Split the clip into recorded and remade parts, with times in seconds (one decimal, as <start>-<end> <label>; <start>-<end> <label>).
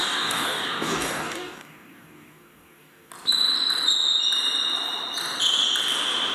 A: 0.0-3.1 remade; 3.1-6.3 recorded